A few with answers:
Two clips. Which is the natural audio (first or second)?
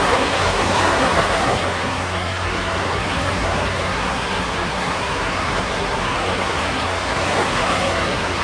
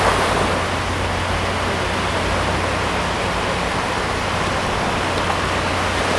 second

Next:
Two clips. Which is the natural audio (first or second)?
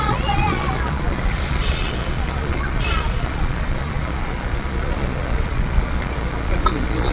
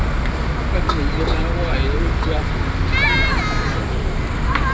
second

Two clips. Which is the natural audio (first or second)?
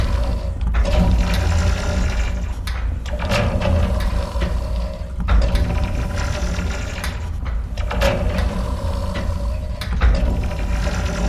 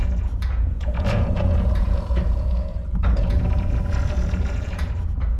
first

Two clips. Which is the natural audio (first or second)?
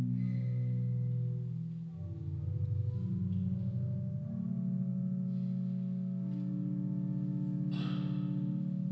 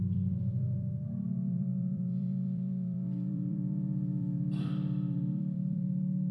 first